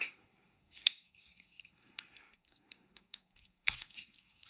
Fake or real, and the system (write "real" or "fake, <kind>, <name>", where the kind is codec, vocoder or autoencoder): fake, codec, SNAC